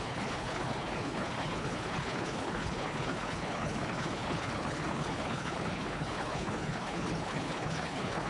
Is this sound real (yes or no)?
no